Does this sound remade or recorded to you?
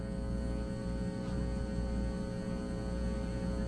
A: recorded